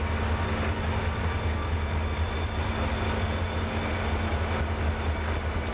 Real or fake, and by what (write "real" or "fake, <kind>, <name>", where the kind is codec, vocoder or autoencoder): real